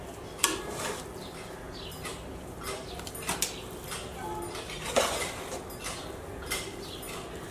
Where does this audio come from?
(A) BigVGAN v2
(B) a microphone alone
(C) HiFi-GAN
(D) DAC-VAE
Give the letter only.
B